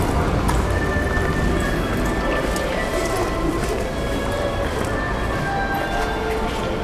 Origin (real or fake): real